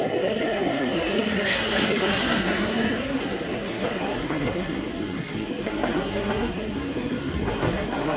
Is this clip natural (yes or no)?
no